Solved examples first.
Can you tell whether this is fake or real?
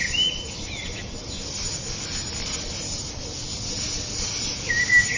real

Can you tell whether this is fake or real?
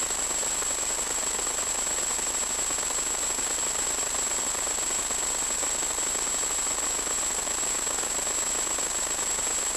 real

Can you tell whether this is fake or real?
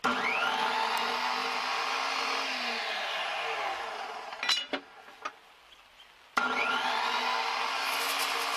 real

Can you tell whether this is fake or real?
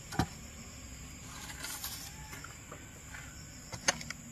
real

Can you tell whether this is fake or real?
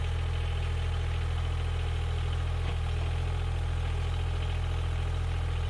real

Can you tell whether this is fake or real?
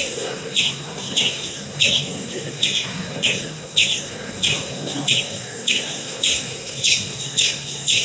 fake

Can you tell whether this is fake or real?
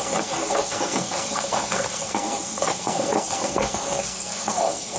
fake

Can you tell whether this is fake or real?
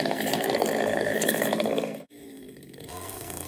fake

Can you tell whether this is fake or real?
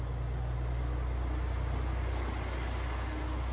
real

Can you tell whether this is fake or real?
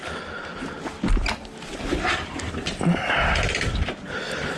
real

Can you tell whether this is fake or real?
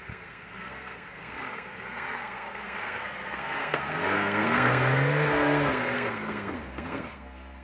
fake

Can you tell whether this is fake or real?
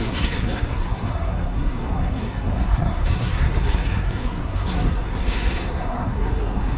fake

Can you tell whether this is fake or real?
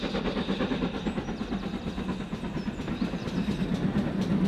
real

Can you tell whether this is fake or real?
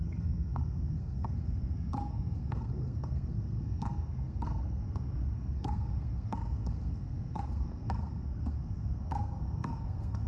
fake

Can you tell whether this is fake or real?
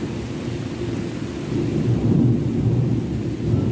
real